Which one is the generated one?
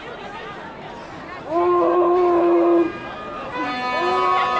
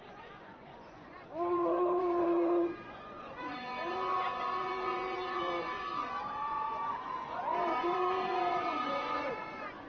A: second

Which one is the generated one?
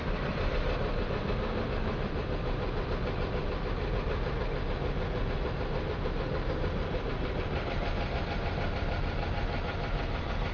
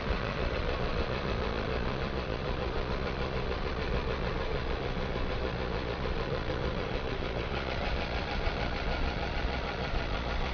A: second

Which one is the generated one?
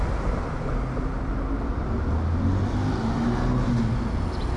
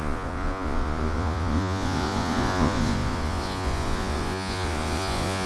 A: second